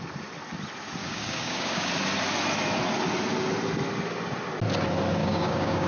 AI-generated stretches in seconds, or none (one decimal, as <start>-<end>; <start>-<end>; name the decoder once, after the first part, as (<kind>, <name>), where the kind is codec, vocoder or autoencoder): 1.0-1.9 (codec, DAC); 5.2-5.9